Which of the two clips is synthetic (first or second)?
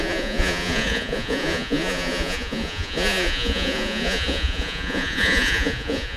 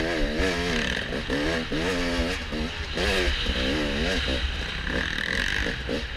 first